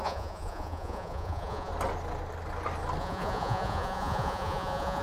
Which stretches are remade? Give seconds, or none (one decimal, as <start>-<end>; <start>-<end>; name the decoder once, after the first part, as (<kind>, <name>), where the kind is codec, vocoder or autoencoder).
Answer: 0.0-1.7 (vocoder, Vocos); 3.0-5.0